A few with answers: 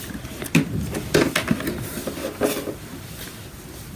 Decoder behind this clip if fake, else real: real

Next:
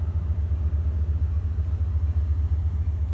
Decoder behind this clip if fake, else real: real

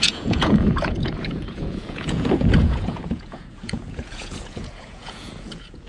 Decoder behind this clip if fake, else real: fake, vocoder, Vocos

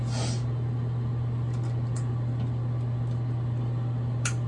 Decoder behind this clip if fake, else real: real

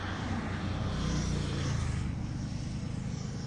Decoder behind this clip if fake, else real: real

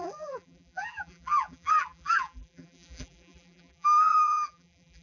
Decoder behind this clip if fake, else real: fake, vocoder, BigVGAN v2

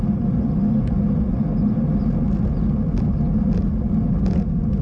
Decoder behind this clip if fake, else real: real